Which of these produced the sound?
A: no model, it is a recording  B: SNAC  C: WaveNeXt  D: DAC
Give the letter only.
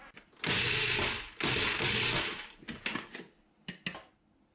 A